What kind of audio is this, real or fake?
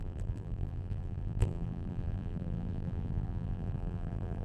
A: fake